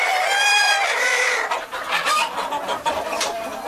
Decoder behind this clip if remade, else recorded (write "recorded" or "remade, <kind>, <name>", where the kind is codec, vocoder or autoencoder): remade, vocoder, BigVGAN v2